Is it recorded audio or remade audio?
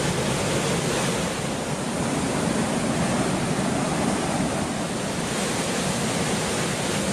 recorded